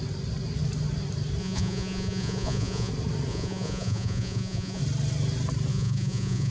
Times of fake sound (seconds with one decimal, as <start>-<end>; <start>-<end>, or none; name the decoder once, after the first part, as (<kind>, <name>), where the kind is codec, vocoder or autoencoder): 1.4-2.9 (vocoder, Vocos); 3.3-4.8; 5.7-6.5